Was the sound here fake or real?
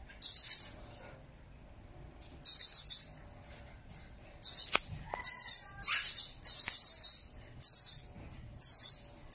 real